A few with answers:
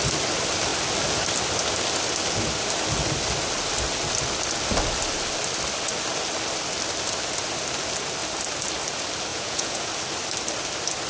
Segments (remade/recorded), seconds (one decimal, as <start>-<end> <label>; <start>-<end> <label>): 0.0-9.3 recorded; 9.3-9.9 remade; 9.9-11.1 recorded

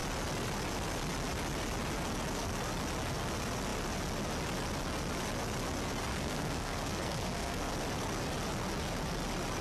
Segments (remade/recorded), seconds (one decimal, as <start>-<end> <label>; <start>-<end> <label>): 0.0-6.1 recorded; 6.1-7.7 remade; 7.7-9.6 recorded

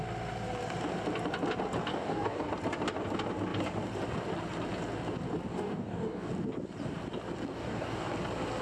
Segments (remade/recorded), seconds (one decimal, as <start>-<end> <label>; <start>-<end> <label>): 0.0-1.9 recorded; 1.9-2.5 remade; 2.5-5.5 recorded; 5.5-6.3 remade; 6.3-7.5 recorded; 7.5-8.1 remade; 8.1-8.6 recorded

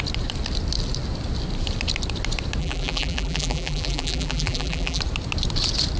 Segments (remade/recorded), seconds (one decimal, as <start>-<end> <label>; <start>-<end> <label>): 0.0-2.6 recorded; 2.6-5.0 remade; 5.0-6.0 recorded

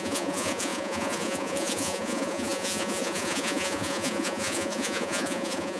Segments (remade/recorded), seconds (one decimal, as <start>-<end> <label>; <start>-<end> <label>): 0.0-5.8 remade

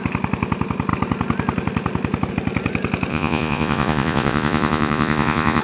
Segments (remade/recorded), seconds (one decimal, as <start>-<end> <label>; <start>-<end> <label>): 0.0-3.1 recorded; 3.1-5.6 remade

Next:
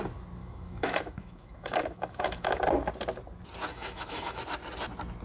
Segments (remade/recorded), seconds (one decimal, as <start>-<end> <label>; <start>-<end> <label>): 0.0-0.4 recorded; 0.4-2.6 remade; 2.6-3.7 recorded; 3.7-4.4 remade; 4.4-5.2 recorded

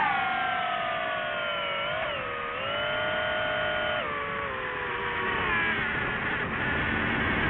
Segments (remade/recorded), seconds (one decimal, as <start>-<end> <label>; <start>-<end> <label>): 0.0-7.5 recorded